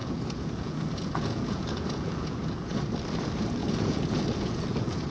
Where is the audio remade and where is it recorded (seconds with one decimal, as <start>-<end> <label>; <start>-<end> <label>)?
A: 0.0-2.7 remade; 2.7-3.6 recorded; 3.6-5.1 remade